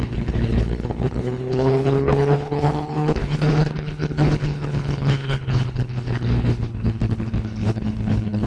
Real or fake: fake